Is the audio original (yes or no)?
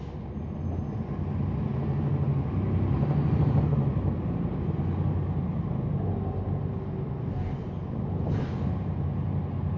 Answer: yes